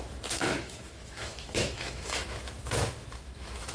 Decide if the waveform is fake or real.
fake